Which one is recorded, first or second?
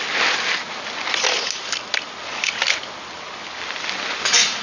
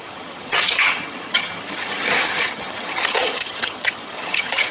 first